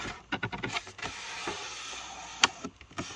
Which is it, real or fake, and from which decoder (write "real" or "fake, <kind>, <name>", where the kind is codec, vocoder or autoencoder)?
real